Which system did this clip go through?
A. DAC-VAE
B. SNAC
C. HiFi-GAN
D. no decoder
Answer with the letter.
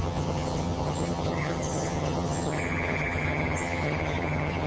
C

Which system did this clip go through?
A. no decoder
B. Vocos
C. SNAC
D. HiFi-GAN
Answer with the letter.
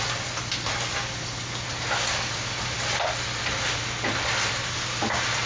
A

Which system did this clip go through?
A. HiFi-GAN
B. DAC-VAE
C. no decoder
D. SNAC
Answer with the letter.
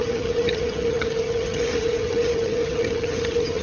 A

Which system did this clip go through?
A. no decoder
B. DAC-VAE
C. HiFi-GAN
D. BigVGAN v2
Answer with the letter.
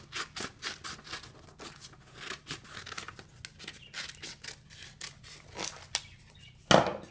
A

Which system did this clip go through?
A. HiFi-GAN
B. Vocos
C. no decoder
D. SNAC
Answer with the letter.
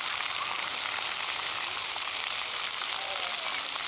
C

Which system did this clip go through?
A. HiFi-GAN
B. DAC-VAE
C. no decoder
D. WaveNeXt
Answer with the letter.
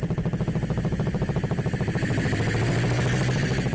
C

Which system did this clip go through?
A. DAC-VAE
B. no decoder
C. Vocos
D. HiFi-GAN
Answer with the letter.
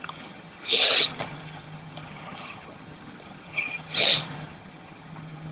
D